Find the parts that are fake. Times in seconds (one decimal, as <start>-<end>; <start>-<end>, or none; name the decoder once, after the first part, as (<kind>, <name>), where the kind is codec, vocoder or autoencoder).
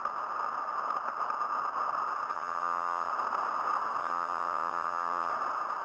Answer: 2.3-3.1 (vocoder, HiFi-GAN); 4.0-5.3